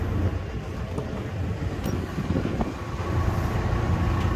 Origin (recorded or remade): recorded